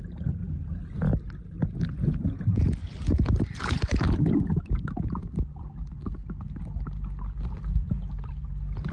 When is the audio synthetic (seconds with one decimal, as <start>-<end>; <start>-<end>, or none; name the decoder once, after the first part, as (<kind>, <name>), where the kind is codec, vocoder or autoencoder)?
none